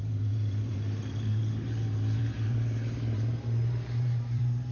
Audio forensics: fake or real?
fake